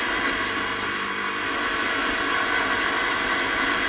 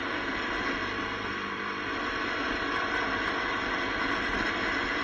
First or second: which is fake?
second